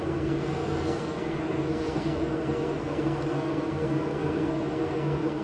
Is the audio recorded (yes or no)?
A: no